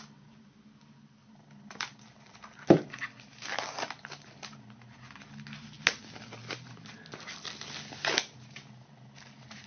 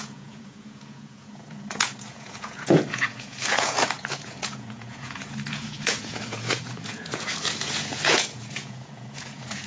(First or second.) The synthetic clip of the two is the second